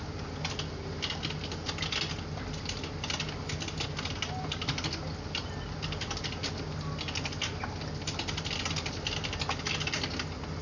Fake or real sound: real